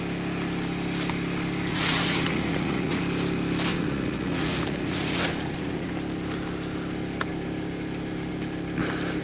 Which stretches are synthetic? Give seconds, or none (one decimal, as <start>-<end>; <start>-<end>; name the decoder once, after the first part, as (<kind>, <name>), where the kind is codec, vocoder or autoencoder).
1.7-3.0 (vocoder, Vocos); 3.7-5.9